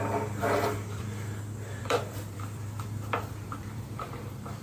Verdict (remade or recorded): remade